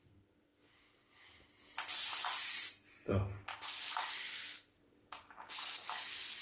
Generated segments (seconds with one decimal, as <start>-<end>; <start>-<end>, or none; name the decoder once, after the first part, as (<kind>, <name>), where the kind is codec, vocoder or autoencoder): 0.0-0.7 (codec, SNAC); 4.2-4.7